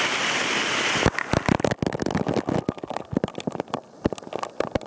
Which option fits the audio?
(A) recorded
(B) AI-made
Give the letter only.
A